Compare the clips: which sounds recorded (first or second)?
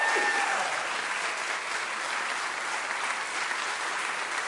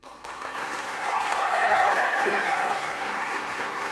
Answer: first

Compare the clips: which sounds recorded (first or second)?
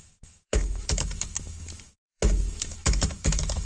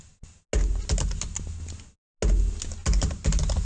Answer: second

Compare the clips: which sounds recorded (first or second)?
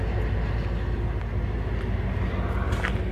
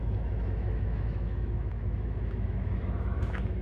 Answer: first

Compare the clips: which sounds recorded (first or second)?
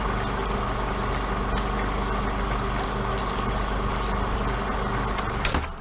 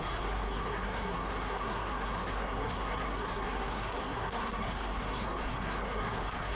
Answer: first